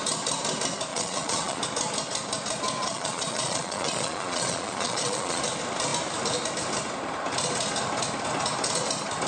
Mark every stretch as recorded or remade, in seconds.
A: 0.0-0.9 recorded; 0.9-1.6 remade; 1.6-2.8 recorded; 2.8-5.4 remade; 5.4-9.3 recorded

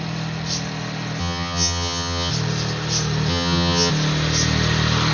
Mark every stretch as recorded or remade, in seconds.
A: 0.0-1.2 recorded; 1.2-2.3 remade; 2.3-3.3 recorded; 3.3-3.9 remade; 3.9-5.1 recorded

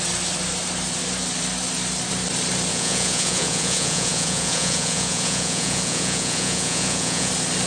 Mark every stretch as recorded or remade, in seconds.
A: 0.0-2.7 recorded; 2.7-7.3 remade; 7.3-7.7 recorded

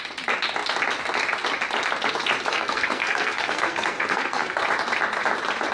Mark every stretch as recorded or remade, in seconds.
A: 0.0-2.5 recorded; 2.5-4.6 remade; 4.6-5.7 recorded